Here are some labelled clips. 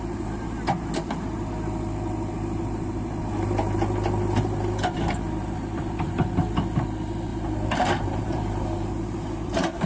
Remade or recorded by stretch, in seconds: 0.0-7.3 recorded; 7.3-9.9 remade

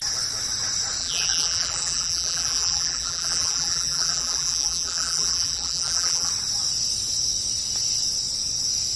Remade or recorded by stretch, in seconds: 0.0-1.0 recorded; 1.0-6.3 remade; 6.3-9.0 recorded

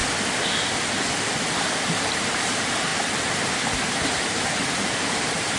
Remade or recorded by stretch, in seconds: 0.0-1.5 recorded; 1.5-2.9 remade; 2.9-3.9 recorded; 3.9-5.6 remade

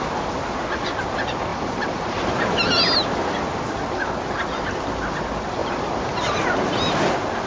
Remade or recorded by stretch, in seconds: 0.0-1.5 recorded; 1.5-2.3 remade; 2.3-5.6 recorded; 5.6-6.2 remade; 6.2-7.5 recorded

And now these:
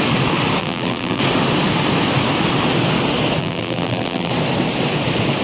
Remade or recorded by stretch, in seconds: 0.0-0.6 recorded; 0.6-1.2 remade; 1.2-3.4 recorded; 3.4-4.3 remade; 4.3-5.4 recorded